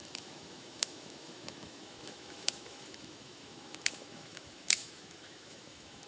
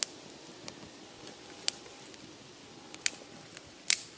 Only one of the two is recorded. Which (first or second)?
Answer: second